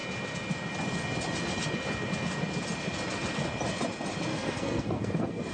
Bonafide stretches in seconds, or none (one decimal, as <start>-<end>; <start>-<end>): 0.0-4.3